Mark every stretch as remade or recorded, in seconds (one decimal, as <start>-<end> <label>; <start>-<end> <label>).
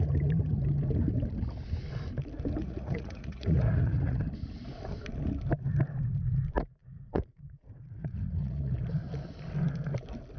0.0-2.6 recorded; 2.6-4.2 remade; 4.2-6.8 recorded; 6.8-8.8 remade; 8.8-10.4 recorded